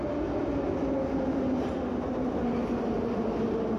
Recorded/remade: recorded